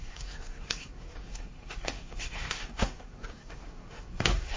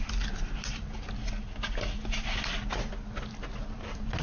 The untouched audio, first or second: second